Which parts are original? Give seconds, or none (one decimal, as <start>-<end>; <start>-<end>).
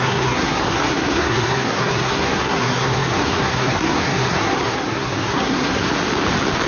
5.9-6.7